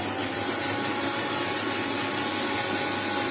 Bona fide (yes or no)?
yes